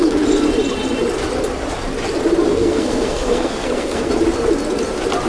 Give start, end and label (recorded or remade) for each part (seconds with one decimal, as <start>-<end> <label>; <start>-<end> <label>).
0.0-2.5 recorded; 2.5-4.1 remade; 4.1-5.3 recorded